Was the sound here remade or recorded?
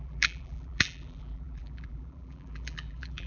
remade